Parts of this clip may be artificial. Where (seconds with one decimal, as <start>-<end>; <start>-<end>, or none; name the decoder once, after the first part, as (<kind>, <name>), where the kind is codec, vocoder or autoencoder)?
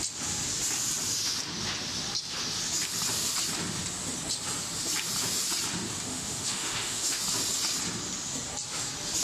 6.1-7.2 (autoencoder, DAC-VAE)